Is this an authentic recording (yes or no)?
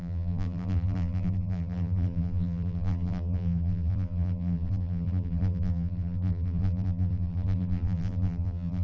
no